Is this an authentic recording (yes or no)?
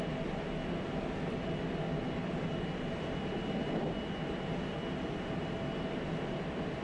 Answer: yes